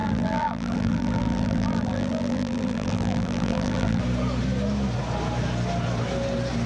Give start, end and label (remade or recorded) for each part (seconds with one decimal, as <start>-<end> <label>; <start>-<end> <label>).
0.0-4.0 remade; 4.0-6.7 recorded